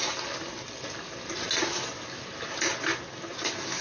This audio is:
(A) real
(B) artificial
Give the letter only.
A